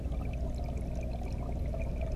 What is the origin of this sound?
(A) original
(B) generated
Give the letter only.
A